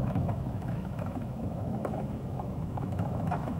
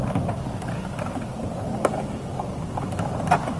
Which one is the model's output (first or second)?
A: first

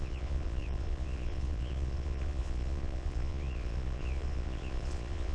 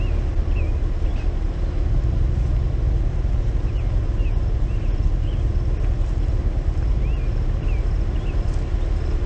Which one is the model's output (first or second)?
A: first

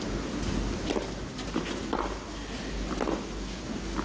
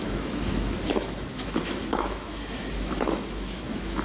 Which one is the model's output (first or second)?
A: second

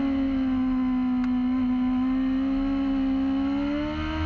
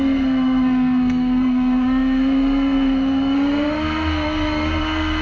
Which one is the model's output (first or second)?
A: second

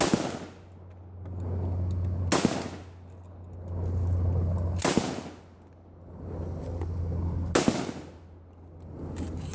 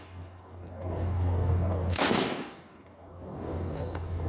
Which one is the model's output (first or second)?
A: second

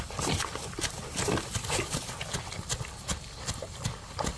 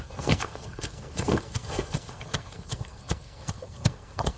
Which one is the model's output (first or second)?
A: second